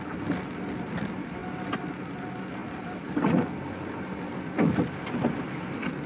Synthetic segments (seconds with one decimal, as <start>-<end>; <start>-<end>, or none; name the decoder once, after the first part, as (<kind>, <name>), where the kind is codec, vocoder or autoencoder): none